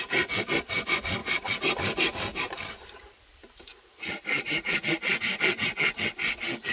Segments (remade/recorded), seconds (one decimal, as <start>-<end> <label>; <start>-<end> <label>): 0.0-1.2 remade; 1.2-3.3 recorded; 3.3-3.7 remade; 3.7-6.7 recorded